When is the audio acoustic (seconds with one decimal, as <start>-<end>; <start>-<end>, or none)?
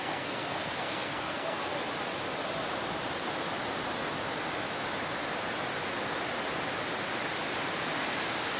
1.6-8.6